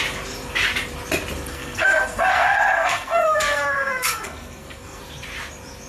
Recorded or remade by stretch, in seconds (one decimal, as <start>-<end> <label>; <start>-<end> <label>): 0.0-1.5 recorded; 1.5-5.0 remade; 5.0-5.9 recorded

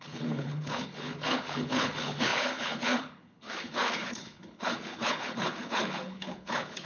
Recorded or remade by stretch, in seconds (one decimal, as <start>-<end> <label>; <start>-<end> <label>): 0.0-6.9 remade

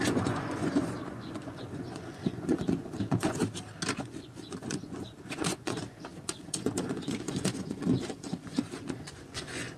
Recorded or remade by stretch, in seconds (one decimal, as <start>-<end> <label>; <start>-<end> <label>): 0.0-3.4 remade; 3.4-4.0 recorded; 4.0-9.8 remade

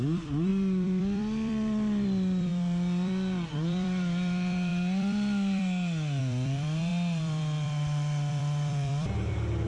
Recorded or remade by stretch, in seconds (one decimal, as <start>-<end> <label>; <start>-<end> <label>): 0.0-9.7 remade

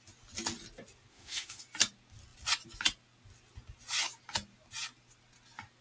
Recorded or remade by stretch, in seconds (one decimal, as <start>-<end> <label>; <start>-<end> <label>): 0.0-1.1 recorded; 1.1-1.6 remade; 1.6-5.8 recorded

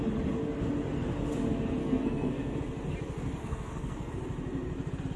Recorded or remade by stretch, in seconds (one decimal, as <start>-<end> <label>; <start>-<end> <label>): 0.0-1.8 recorded; 1.8-2.6 remade; 2.6-3.4 recorded; 3.4-4.1 remade; 4.1-5.2 recorded

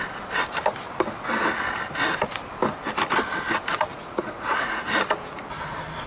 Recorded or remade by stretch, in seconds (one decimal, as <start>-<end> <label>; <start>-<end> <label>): 0.0-3.9 recorded; 3.9-4.8 remade; 4.8-6.1 recorded